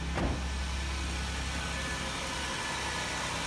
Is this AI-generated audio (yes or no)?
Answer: no